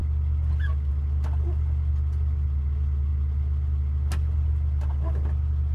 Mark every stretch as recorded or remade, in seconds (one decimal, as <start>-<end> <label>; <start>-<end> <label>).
0.0-5.7 recorded